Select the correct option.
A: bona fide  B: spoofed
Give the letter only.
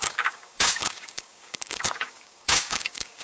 B